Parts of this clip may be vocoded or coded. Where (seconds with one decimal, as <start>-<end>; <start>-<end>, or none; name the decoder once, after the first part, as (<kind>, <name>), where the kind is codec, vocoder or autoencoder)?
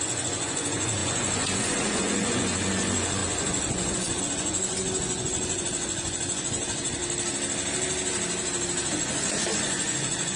0.0-7.0 (vocoder, Vocos); 8.9-10.4